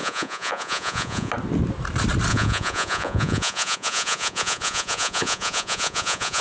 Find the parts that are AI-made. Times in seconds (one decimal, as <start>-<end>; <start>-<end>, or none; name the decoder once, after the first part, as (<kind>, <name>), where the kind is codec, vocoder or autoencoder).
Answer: 0.0-1.3 (vocoder, Vocos); 2.3-6.4